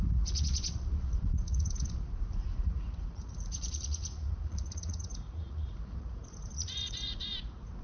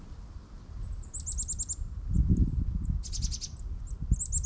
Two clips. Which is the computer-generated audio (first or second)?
first